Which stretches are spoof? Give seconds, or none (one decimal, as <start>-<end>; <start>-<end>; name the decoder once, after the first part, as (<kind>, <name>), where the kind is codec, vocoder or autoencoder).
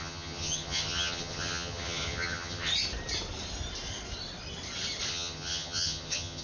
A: 0.0-2.7 (vocoder, HiFi-GAN); 5.1-6.4